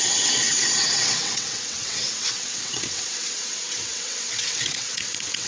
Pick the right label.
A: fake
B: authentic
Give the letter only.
A